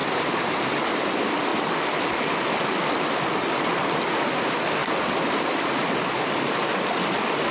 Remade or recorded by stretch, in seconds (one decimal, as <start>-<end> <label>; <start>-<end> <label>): 0.0-0.5 remade; 0.5-1.5 recorded; 1.5-3.3 remade; 3.3-4.8 recorded; 4.8-5.4 remade; 5.4-7.5 recorded